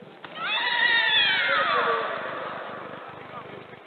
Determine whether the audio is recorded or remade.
recorded